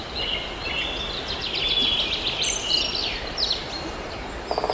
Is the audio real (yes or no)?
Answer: yes